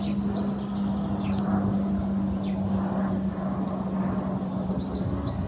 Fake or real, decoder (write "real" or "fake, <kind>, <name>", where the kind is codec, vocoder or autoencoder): real